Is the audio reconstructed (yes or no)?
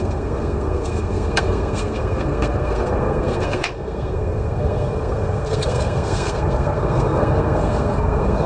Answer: yes